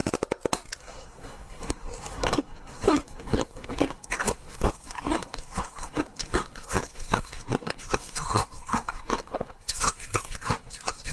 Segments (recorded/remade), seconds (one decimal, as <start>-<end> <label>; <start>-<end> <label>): 0.0-0.8 recorded; 0.8-11.1 remade